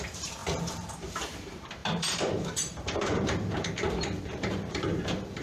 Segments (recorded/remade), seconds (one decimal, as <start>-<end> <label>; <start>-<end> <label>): 0.0-5.4 remade